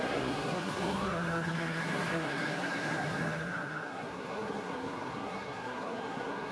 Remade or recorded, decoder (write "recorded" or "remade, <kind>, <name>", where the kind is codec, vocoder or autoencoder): remade, codec, SNAC